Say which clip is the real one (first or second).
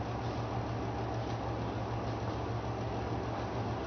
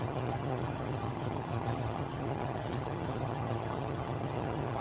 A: first